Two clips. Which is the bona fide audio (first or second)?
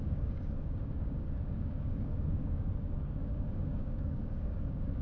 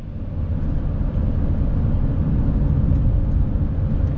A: second